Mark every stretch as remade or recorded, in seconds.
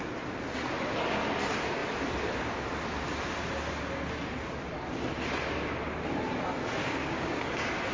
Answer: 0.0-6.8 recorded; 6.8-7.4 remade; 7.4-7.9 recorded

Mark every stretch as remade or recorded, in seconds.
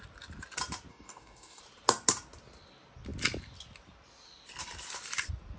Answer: 0.0-0.9 recorded; 0.9-1.6 remade; 1.6-5.6 recorded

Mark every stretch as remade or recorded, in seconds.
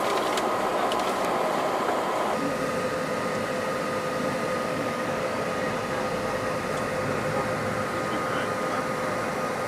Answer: 0.0-4.7 recorded; 4.7-5.4 remade; 5.4-9.7 recorded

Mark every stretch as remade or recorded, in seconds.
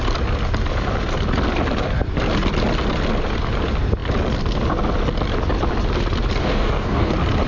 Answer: 0.0-6.4 recorded; 6.4-7.1 remade; 7.1-7.5 recorded